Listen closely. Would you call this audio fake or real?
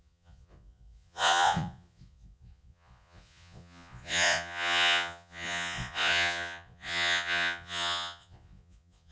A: fake